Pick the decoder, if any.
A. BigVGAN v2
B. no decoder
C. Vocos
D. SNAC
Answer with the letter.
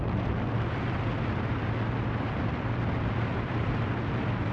A